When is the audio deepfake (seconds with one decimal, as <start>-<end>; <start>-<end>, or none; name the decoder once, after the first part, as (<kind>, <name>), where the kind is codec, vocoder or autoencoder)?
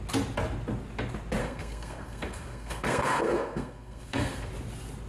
1.4-4.5 (codec, SNAC)